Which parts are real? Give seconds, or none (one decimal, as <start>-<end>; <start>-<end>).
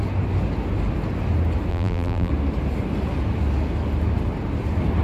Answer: 0.0-1.7; 2.3-5.0